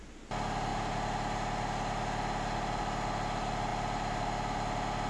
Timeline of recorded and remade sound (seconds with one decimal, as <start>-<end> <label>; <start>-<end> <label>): 0.0-5.1 recorded

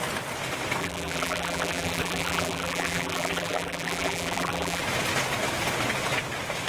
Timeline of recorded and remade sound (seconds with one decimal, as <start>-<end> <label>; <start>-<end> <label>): 0.0-0.8 recorded; 0.8-4.8 remade; 4.8-6.7 recorded

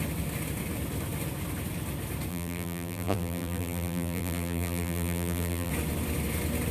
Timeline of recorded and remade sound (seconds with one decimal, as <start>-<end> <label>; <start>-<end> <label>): 0.0-2.3 recorded; 2.3-5.7 remade; 5.7-6.7 recorded

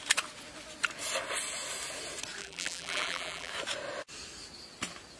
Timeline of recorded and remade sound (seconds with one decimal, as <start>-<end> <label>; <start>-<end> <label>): 0.0-2.4 recorded; 2.4-3.5 remade; 3.5-5.2 recorded

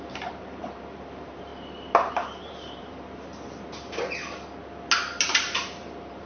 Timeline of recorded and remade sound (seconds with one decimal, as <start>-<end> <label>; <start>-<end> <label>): 0.0-1.5 remade; 1.5-2.1 recorded; 2.1-3.3 remade; 3.3-5.4 recorded; 5.4-6.3 remade

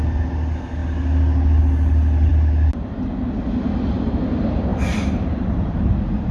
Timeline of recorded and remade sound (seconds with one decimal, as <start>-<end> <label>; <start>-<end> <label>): 0.0-4.7 recorded; 4.7-5.7 remade; 5.7-6.3 recorded